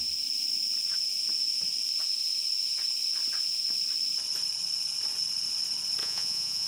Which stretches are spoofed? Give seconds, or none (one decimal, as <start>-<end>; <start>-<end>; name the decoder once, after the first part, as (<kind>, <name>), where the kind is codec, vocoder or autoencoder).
6.0-6.7 (vocoder, Vocos)

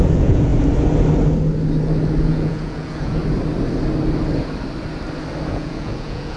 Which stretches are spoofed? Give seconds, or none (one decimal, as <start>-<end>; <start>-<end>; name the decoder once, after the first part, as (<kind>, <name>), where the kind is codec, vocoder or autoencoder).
0.0-0.5 (vocoder, Vocos); 2.2-3.2; 5.5-6.4

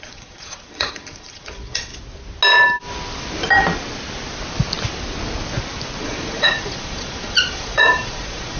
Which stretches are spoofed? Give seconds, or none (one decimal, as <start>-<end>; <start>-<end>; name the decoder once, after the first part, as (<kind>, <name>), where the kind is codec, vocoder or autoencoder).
0.0-1.9 (vocoder, Vocos); 6.0-8.6

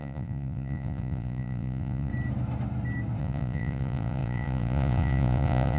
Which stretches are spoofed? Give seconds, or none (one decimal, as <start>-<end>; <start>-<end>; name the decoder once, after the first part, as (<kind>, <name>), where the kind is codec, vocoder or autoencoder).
0.0-2.1 (vocoder, Vocos); 3.2-5.8

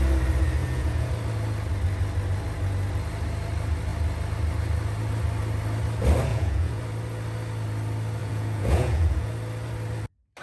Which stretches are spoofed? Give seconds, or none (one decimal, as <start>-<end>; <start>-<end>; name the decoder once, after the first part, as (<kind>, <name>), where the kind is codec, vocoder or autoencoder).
0.6-1.1 (vocoder, Vocos); 6.3-6.8; 8.2-9.3